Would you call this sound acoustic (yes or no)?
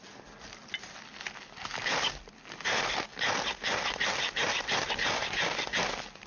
yes